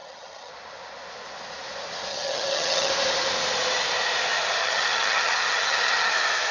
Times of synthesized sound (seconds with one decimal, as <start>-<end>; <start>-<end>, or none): 0.0-0.5; 2.1-2.9; 4.6-6.1